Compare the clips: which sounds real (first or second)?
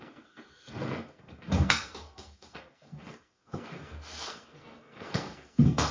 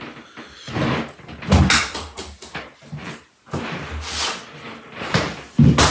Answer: second